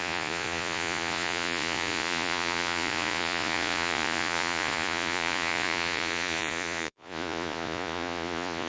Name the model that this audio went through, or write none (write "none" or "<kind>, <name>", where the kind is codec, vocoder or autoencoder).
vocoder, Vocos